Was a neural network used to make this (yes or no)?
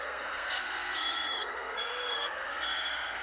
yes